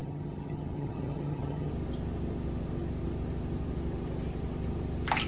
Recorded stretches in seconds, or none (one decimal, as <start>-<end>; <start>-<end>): 1.7-5.3